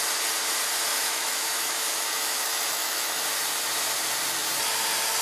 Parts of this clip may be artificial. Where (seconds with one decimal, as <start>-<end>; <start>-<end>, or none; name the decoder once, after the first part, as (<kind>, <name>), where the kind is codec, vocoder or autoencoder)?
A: 0.9-3.2 (autoencoder, DAC-VAE)